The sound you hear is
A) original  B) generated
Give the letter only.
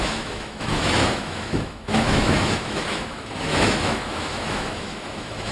B